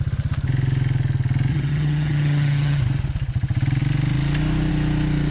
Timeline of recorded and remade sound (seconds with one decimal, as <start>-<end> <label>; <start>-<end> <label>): 0.0-1.5 recorded; 1.5-2.8 remade; 2.8-5.3 recorded